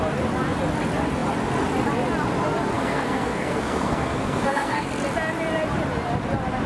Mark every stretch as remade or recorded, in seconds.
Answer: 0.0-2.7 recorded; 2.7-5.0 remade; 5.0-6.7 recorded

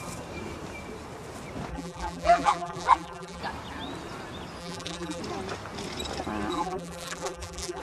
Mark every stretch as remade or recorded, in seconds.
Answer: 0.0-1.7 recorded; 1.7-3.4 remade; 3.4-4.6 recorded; 4.6-5.2 remade; 5.2-6.5 recorded; 6.5-7.8 remade

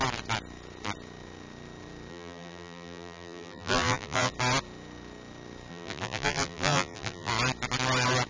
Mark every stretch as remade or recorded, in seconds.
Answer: 0.0-2.1 recorded; 2.1-4.3 remade; 4.3-5.7 recorded; 5.7-7.3 remade; 7.3-8.3 recorded

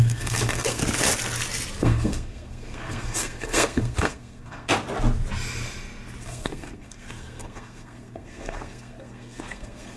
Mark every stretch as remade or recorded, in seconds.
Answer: 0.0-0.8 remade; 0.8-1.8 recorded; 1.8-4.7 remade; 4.7-6.2 recorded; 6.2-10.0 remade